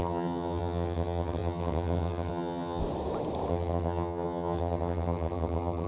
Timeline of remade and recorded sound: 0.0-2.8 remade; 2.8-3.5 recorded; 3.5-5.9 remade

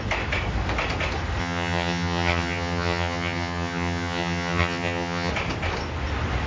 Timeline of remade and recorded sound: 0.0-1.4 recorded; 1.4-5.3 remade; 5.3-6.5 recorded

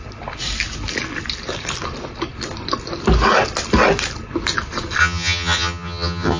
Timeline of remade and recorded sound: 0.0-5.0 recorded; 5.0-6.4 remade

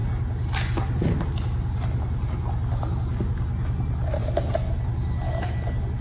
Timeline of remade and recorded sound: 0.0-6.0 recorded

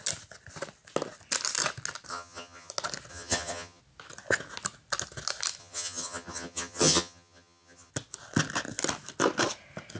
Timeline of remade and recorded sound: 0.0-2.1 recorded; 2.1-2.7 remade; 2.7-3.1 recorded; 3.1-3.8 remade; 3.8-5.6 recorded; 5.6-7.9 remade; 7.9-10.0 recorded

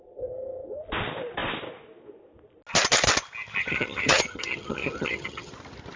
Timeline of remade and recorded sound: 0.0-3.6 recorded; 3.6-5.5 remade; 5.5-6.0 recorded

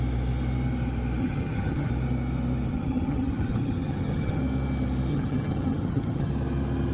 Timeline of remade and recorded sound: 0.0-1.2 recorded; 1.2-1.9 remade; 1.9-2.7 recorded; 2.7-4.4 remade; 4.4-5.1 recorded; 5.1-6.3 remade; 6.3-6.9 recorded